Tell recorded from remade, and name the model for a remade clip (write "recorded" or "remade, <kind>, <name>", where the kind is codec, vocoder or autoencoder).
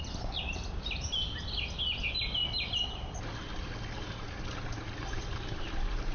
recorded